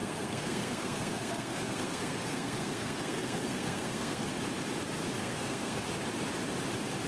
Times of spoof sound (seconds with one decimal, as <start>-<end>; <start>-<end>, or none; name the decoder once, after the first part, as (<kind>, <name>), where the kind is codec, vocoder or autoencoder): 0.0-4.3 (codec, SNAC); 5.2-5.8